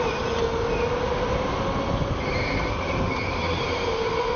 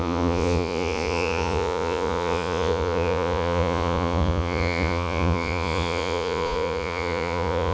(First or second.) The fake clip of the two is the second